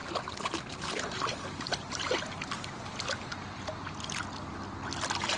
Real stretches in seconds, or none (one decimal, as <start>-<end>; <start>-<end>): 0.0-5.4